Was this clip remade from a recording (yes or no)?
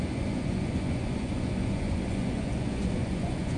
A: yes